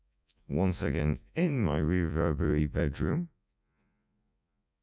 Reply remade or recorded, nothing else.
remade